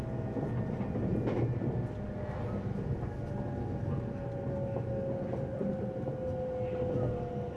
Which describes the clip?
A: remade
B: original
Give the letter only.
B